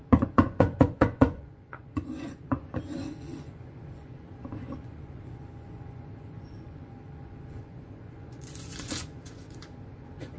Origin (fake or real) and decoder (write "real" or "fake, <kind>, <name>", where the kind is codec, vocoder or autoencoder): fake, vocoder, Vocos